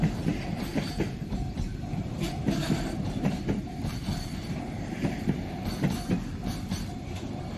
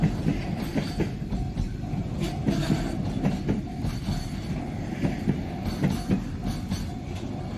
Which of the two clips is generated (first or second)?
first